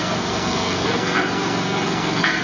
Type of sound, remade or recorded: remade